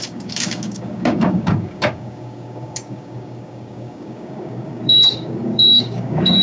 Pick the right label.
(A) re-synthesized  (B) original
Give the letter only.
A